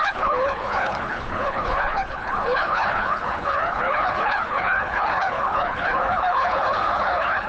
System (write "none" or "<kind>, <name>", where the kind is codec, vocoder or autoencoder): codec, HILCodec